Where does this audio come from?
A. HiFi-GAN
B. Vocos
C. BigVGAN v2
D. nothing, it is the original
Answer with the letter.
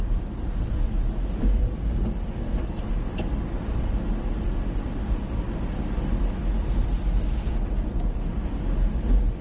D